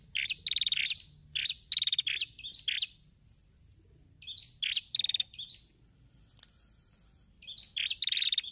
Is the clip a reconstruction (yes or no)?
no